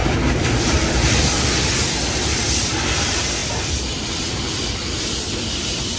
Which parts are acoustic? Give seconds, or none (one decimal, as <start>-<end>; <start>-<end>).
1.5-3.4